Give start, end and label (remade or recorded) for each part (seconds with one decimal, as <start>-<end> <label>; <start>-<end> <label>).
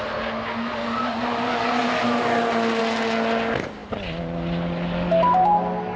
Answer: 0.0-6.0 recorded